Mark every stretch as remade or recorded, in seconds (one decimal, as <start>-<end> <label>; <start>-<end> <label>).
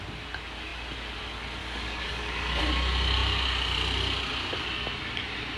0.0-1.6 recorded; 1.6-2.6 remade; 2.6-5.6 recorded